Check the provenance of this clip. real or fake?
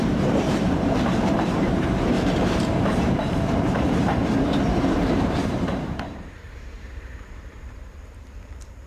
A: fake